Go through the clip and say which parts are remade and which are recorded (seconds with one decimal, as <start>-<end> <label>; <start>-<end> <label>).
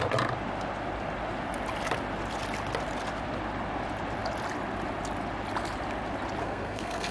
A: 0.0-6.4 recorded; 6.4-7.1 remade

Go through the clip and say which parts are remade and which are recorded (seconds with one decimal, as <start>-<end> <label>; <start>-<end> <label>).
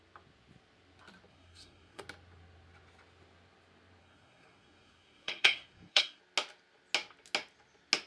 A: 0.0-1.3 recorded; 1.3-2.0 remade; 2.0-4.0 recorded; 4.0-6.2 remade; 6.2-8.1 recorded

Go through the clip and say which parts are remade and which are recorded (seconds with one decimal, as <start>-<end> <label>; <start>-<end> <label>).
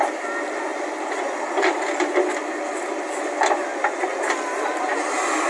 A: 0.0-5.5 recorded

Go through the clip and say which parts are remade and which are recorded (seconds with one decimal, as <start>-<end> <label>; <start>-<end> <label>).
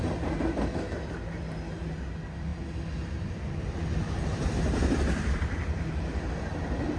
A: 0.0-7.0 recorded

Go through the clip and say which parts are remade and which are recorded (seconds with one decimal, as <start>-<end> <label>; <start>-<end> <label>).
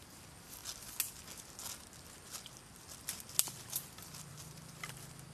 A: 0.0-5.3 recorded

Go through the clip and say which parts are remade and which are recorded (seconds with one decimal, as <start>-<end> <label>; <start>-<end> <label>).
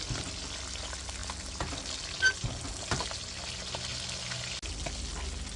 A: 0.0-5.6 recorded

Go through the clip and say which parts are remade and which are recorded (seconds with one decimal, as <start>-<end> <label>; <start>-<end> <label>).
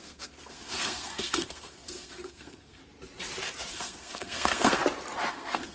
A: 0.0-2.8 remade; 2.8-3.7 recorded; 3.7-4.8 remade; 4.8-5.3 recorded; 5.3-5.7 remade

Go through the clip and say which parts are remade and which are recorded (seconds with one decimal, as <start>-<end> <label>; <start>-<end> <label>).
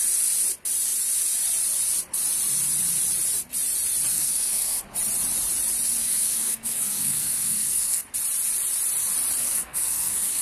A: 0.0-4.1 recorded; 4.1-4.8 remade; 4.8-6.0 recorded; 6.0-8.0 remade; 8.0-9.4 recorded; 9.4-10.4 remade